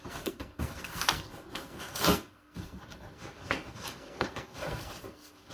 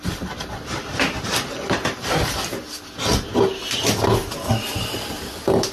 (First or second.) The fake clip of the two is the first